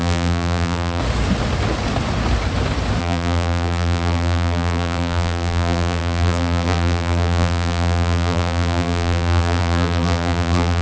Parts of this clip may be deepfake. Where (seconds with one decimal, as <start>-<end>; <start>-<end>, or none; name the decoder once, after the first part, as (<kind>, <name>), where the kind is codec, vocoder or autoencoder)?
0.0-1.0 (vocoder, BigVGAN v2); 3.0-10.8